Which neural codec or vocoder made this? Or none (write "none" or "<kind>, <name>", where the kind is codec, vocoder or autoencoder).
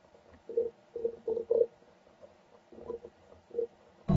none